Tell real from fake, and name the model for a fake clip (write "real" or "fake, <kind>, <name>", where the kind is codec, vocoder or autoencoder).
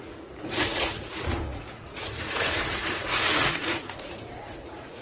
fake, vocoder, Vocos